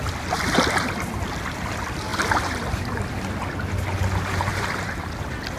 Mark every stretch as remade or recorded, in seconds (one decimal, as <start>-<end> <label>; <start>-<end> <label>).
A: 0.0-4.5 recorded; 4.5-5.1 remade; 5.1-5.6 recorded